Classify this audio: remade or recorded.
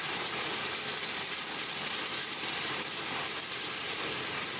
remade